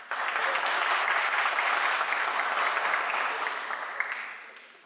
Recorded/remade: recorded